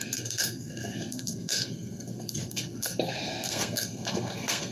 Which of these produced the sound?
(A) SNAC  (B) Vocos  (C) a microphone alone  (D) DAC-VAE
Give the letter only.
A